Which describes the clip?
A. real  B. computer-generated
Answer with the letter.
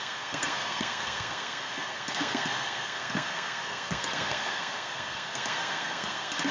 B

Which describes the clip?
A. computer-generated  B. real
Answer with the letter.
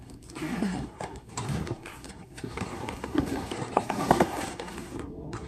A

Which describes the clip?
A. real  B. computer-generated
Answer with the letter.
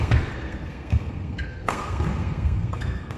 B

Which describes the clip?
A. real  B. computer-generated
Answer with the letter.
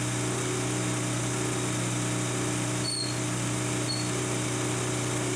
A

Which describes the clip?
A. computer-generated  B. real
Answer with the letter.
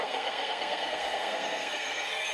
A